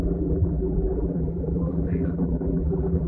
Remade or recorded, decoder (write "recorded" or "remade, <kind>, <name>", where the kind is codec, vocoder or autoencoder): remade, vocoder, BigVGAN v2